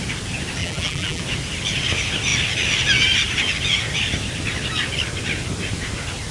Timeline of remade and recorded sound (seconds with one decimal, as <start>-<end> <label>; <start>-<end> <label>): 0.0-0.6 recorded; 0.6-1.2 remade; 1.2-6.3 recorded